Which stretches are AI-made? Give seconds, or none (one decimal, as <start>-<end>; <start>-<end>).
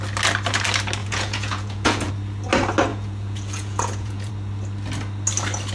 1.0-2.1; 2.9-4.3